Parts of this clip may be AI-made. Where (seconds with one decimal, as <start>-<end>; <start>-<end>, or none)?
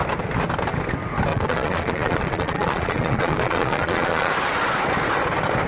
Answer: 1.3-4.3